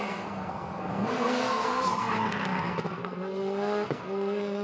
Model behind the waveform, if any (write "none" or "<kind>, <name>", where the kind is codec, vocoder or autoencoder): codec, SNAC